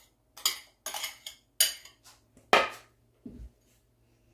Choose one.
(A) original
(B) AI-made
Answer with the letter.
A